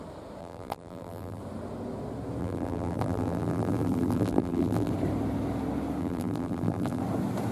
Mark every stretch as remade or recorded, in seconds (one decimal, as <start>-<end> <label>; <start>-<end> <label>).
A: 0.0-0.4 recorded; 0.4-1.4 remade; 1.4-2.4 recorded; 2.4-4.9 remade; 4.9-6.0 recorded; 6.0-7.0 remade; 7.0-7.5 recorded